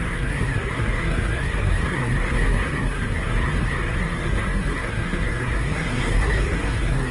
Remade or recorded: remade